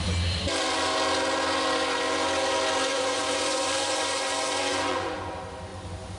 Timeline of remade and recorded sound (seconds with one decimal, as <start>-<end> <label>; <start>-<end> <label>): 0.0-2.9 recorded; 2.9-5.3 remade; 5.3-5.7 recorded; 5.7-6.2 remade